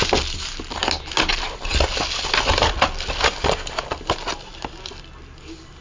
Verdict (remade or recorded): recorded